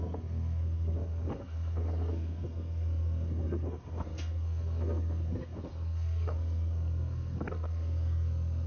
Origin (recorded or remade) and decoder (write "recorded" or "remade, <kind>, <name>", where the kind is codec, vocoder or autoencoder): remade, codec, SNAC